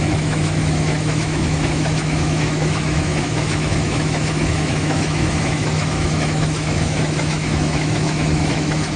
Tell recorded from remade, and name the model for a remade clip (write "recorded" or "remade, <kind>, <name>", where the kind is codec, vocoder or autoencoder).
remade, autoencoder, DAC-VAE